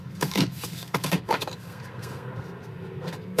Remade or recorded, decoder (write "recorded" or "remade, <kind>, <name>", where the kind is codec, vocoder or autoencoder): remade, codec, SNAC